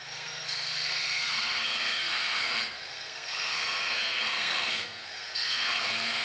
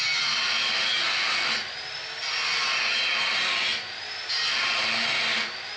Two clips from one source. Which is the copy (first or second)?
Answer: first